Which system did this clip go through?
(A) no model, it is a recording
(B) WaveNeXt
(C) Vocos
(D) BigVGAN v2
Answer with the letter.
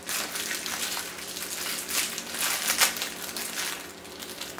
A